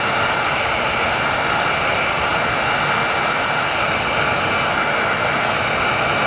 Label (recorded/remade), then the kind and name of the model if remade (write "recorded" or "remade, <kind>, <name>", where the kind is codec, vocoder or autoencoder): recorded